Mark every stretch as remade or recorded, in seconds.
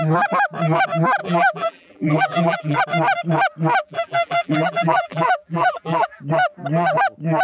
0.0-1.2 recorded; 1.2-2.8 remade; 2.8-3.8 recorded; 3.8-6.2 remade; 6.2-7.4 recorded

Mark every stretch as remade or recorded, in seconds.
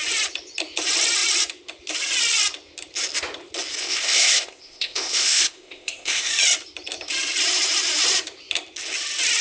0.0-3.8 recorded; 3.8-6.3 remade; 6.3-9.4 recorded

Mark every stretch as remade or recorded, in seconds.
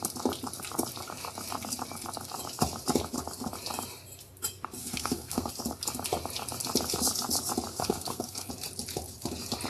0.0-4.8 recorded; 4.8-5.5 remade; 5.5-7.7 recorded; 7.7-8.5 remade; 8.5-9.7 recorded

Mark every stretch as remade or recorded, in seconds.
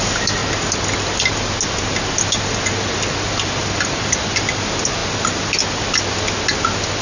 0.0-7.0 recorded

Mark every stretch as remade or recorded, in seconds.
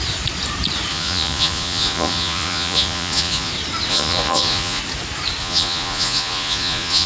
0.0-0.9 recorded; 0.9-3.5 remade; 3.5-3.9 recorded; 3.9-4.8 remade; 4.8-5.4 recorded; 5.4-7.1 remade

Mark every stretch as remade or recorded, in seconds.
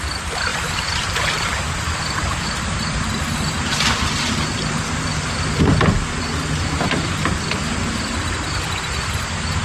0.0-0.5 recorded; 0.5-5.7 remade; 5.7-9.6 recorded